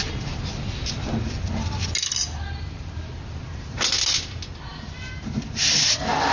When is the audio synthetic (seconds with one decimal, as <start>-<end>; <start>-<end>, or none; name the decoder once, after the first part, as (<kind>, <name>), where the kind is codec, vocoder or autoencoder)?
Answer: none